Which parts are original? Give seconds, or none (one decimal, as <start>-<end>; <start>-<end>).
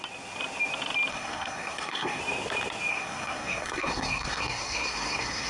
0.0-1.1; 2.2-2.9